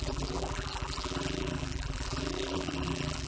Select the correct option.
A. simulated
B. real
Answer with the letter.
A